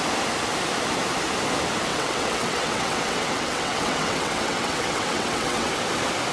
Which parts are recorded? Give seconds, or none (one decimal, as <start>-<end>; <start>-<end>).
0.0-1.9; 5.7-6.3